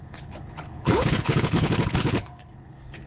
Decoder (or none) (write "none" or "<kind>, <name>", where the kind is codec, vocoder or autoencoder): codec, HILCodec